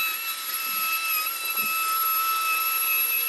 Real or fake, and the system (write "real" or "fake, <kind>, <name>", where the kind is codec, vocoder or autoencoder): real